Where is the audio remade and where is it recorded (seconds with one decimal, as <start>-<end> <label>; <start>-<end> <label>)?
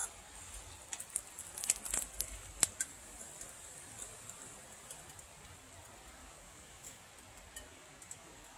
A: 0.0-6.2 recorded; 6.2-7.1 remade; 7.1-7.7 recorded; 7.7-8.6 remade